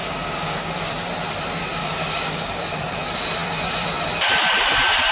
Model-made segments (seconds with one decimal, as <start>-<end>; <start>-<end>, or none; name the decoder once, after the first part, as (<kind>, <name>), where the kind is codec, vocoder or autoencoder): 0.0-0.7 (codec, DAC); 1.8-2.6